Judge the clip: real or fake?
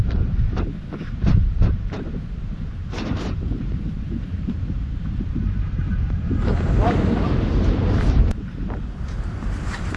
fake